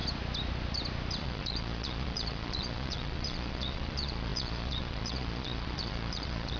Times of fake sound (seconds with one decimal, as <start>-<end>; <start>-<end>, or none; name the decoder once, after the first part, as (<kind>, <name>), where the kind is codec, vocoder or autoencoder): 1.2-6.6 (vocoder, Vocos)